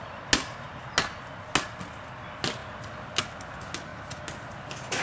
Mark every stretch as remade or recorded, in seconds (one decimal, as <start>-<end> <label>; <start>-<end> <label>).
0.0-5.0 recorded